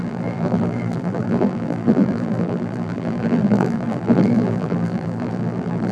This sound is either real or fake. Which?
fake